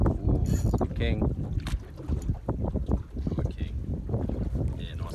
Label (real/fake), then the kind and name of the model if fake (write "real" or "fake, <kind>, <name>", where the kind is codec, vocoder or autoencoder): real